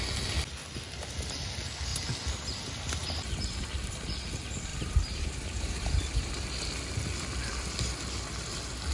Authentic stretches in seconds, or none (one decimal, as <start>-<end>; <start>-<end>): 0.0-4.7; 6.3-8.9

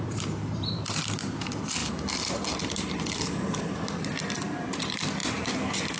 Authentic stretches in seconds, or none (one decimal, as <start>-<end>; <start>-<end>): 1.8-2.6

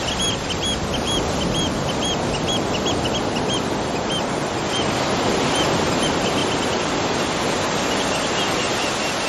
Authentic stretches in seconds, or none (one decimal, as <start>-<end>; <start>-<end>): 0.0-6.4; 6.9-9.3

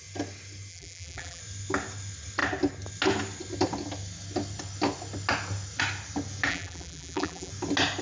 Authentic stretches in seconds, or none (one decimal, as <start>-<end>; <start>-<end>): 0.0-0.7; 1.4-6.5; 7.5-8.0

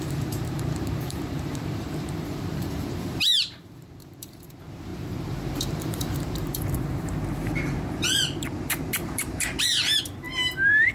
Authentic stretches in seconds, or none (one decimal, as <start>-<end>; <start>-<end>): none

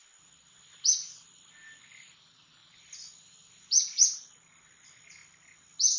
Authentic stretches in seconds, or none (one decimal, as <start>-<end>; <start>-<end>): 0.0-6.0

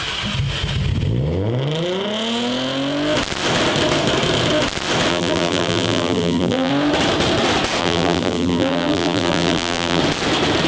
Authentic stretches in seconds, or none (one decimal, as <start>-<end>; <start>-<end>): 0.0-5.1; 6.7-7.8; 10.0-10.7